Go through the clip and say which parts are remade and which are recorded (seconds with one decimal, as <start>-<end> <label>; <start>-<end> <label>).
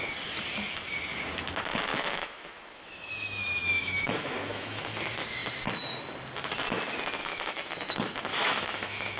0.0-1.9 recorded; 1.9-4.8 remade; 4.8-7.2 recorded; 7.2-7.9 remade; 7.9-8.3 recorded; 8.3-9.2 remade